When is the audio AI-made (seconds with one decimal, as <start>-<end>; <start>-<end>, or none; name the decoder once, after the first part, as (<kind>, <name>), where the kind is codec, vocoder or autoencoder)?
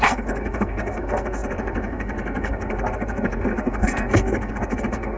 0.0-5.2 (codec, SNAC)